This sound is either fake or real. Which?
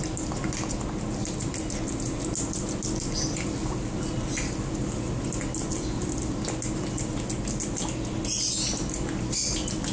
real